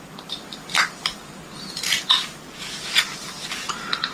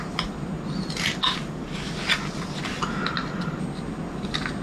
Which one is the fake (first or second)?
first